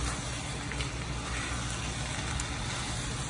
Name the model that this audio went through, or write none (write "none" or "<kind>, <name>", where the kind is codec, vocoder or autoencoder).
none